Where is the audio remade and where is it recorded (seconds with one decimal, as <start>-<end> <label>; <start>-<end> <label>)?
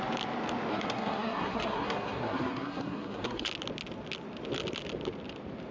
0.0-0.7 recorded; 0.7-3.5 remade; 3.5-5.7 recorded